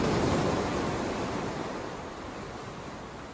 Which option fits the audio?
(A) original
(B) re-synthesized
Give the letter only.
B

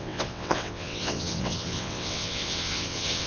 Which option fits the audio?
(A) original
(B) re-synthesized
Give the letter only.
B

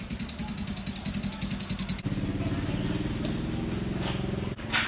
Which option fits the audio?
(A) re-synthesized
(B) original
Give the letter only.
B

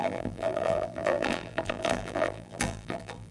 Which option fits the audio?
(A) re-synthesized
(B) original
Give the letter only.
A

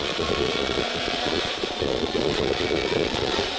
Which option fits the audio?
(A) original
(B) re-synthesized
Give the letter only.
B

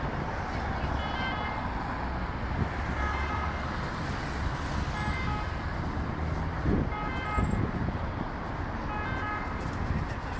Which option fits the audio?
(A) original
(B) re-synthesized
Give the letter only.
A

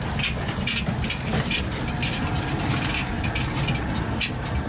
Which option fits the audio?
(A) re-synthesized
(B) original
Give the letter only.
B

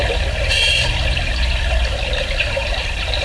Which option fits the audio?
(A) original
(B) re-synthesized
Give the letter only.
A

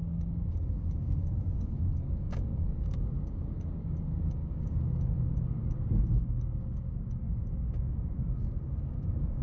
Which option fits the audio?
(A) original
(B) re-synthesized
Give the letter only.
B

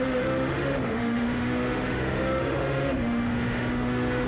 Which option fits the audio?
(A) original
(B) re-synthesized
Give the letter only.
B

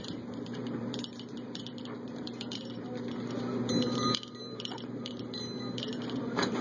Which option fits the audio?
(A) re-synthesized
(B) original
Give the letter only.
A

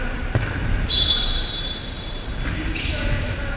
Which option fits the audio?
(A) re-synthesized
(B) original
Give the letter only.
A